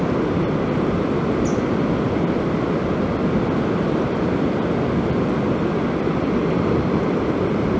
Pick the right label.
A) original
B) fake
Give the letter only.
A